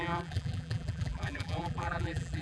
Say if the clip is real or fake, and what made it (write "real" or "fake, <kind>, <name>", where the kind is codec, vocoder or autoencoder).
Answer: fake, vocoder, BigVGAN v2